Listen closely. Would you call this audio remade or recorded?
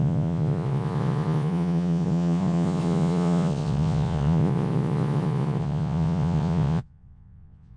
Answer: remade